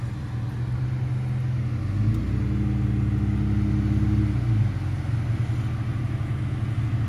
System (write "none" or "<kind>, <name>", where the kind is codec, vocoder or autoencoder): none